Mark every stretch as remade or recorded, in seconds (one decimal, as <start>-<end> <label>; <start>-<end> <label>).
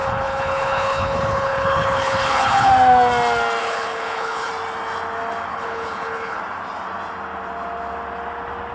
0.0-2.7 remade; 2.7-3.6 recorded; 3.6-4.5 remade; 4.5-5.5 recorded; 5.5-6.4 remade; 6.4-8.7 recorded